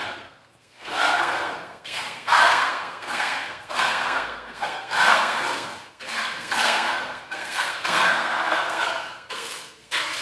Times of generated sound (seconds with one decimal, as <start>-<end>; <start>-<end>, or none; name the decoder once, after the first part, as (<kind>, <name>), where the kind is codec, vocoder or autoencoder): 0.0-10.2 (codec, SNAC)